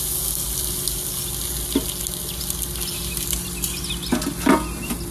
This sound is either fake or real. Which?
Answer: real